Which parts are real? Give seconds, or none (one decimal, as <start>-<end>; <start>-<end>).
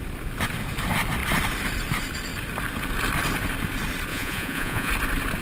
0.0-4.1; 4.9-5.4